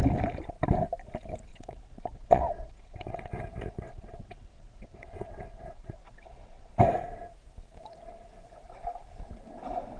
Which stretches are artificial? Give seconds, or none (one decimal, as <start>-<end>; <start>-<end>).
1.5-6.7